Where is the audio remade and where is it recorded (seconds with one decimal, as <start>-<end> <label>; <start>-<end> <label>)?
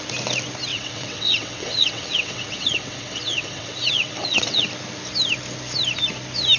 0.0-0.7 recorded; 0.7-4.7 remade; 4.7-6.6 recorded